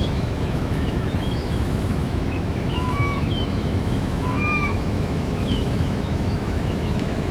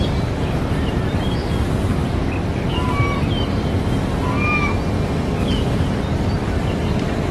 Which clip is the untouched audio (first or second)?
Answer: second